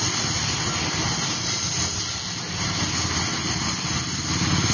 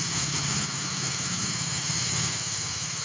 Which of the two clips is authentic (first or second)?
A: first